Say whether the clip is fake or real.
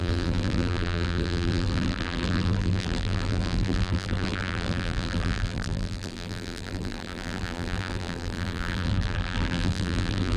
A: fake